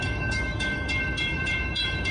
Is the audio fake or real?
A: fake